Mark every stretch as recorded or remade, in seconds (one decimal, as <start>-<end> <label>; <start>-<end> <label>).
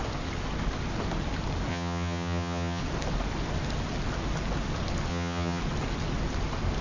0.0-1.7 recorded; 1.7-2.8 remade; 2.8-5.1 recorded; 5.1-5.6 remade; 5.6-6.8 recorded